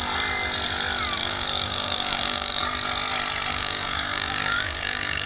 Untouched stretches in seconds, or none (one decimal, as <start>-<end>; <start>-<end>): 0.0-1.2; 2.6-3.5